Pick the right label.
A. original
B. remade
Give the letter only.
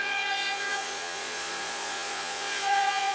B